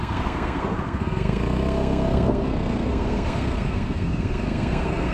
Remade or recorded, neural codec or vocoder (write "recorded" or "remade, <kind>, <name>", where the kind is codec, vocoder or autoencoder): remade, codec, SNAC